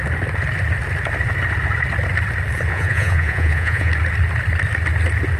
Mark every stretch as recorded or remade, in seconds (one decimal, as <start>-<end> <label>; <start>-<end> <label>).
0.0-2.7 recorded; 2.7-3.9 remade; 3.9-5.4 recorded